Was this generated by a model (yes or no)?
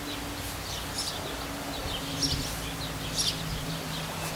no